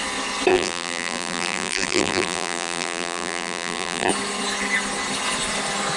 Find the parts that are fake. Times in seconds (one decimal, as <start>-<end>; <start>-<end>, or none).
0.5-4.1